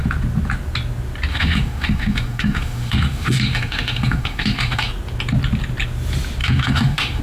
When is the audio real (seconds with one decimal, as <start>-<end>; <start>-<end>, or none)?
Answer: 0.0-1.3; 4.9-6.4